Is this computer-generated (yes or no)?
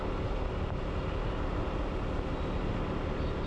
no